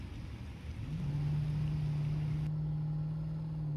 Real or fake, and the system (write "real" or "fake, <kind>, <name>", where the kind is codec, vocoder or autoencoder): real